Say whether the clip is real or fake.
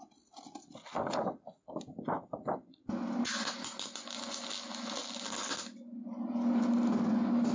real